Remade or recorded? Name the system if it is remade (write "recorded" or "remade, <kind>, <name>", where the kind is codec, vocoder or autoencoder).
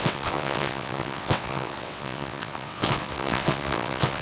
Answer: remade, vocoder, WaveNeXt